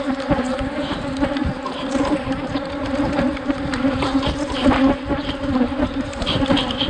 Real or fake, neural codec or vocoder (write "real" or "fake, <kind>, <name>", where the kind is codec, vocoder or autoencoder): fake, vocoder, BigVGAN v2